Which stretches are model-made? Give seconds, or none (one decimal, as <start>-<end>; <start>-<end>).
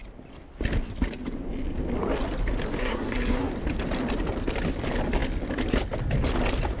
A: 2.8-3.5